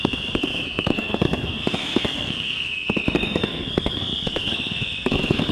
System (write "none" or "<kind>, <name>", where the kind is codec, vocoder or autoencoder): codec, SNAC